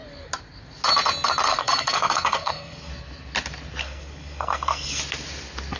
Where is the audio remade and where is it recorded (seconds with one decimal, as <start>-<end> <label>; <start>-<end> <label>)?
0.0-1.5 recorded; 1.5-2.9 remade; 2.9-3.8 recorded; 3.8-5.0 remade; 5.0-5.8 recorded